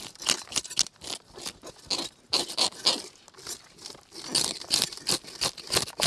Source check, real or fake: real